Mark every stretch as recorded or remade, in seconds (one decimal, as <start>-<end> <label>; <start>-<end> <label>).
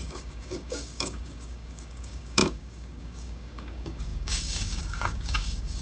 0.0-5.8 remade